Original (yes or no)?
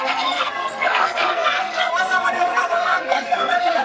no